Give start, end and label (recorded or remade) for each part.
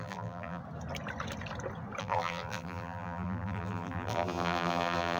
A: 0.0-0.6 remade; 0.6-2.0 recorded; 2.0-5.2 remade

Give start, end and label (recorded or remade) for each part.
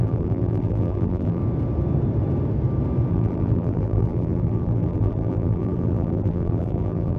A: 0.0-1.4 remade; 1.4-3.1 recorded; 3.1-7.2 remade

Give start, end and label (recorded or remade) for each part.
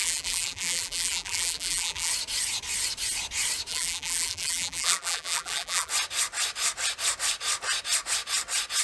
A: 0.0-2.1 remade; 2.1-3.7 recorded; 3.7-5.9 remade; 5.9-8.8 recorded